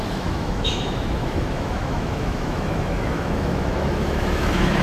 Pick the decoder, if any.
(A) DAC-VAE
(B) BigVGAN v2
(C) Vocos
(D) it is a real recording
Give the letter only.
A